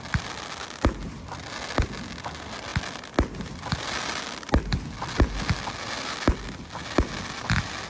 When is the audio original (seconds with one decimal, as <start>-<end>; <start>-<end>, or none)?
0.0-7.9